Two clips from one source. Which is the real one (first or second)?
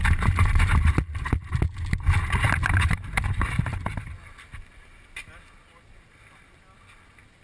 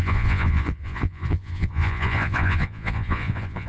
first